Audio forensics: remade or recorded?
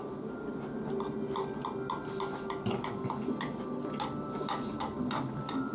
recorded